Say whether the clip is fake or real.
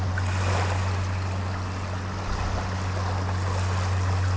real